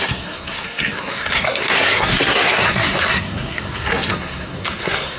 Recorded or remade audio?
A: remade